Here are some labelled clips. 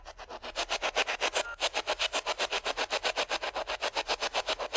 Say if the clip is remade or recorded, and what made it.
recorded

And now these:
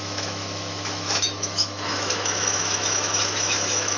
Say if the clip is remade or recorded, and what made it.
remade, autoencoder, DAC-VAE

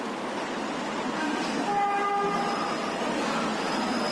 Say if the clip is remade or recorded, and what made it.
recorded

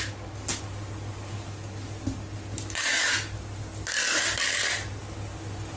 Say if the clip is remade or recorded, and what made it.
recorded